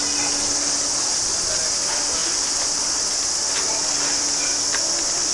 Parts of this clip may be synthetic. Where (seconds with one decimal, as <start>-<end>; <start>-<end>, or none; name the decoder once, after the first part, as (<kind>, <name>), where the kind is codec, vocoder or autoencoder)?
none